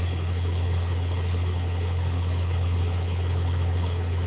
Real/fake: fake